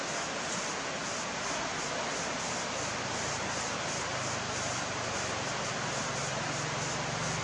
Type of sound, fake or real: real